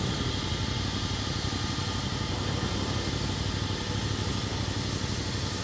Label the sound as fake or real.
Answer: real